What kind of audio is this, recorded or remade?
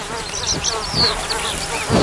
recorded